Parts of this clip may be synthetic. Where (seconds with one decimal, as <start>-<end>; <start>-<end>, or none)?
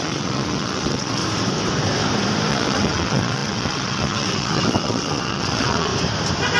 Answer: 0.0-1.2; 2.5-5.9